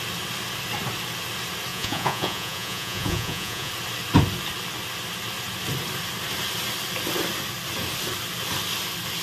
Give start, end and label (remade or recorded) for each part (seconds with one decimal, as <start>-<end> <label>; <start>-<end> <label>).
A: 0.0-1.7 recorded; 1.7-3.7 remade; 3.7-9.2 recorded

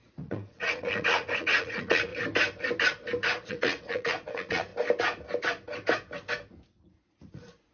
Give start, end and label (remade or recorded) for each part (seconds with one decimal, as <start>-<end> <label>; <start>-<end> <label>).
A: 0.0-2.1 remade; 2.1-3.5 recorded; 3.5-4.7 remade; 4.7-6.9 recorded; 6.9-7.7 remade

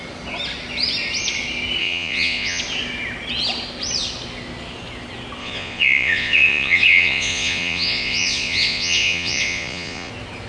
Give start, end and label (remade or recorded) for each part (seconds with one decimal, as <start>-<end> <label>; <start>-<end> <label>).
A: 0.0-1.8 recorded; 1.8-2.6 remade; 2.6-5.4 recorded; 5.4-10.1 remade; 10.1-10.5 recorded

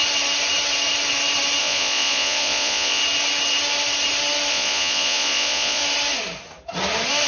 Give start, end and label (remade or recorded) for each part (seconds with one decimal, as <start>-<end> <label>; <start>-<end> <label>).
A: 0.0-1.6 recorded; 1.6-3.0 remade; 3.0-4.5 recorded; 4.5-5.8 remade; 5.8-7.3 recorded

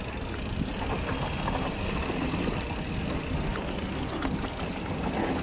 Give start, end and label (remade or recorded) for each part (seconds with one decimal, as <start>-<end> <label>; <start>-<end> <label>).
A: 0.0-5.4 recorded